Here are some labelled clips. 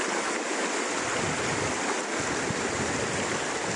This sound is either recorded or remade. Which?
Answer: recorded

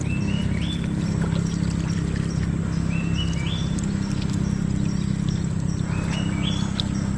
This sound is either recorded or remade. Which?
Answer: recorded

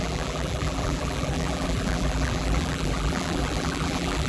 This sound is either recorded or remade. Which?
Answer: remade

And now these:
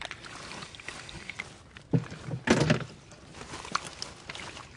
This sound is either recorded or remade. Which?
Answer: recorded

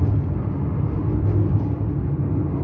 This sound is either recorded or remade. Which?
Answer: recorded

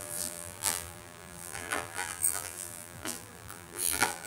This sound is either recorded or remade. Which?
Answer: remade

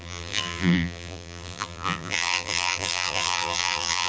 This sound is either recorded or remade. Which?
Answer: remade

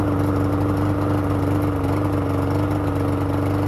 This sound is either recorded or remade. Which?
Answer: recorded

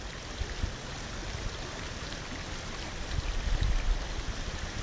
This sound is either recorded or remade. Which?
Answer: recorded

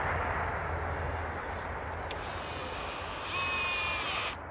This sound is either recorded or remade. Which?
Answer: recorded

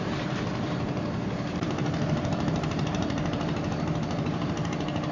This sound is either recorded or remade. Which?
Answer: remade